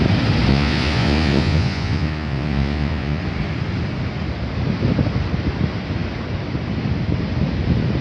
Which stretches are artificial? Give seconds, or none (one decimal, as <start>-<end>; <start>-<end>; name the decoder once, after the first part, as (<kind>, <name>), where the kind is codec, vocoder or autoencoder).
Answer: 0.5-3.2 (vocoder, Vocos)